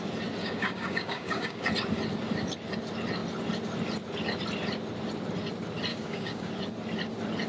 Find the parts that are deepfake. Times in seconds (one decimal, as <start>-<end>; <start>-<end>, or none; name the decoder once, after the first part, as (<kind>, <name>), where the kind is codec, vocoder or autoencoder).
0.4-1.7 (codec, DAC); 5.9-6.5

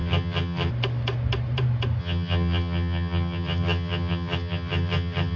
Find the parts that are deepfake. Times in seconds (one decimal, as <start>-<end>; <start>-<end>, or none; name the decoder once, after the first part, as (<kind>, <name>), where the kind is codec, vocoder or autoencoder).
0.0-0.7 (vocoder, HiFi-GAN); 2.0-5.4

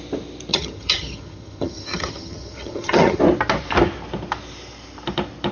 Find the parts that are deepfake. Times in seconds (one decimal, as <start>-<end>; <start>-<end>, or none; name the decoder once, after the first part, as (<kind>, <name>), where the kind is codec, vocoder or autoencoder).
0.5-3.2 (vocoder, HiFi-GAN)